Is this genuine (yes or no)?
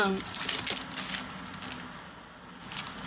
yes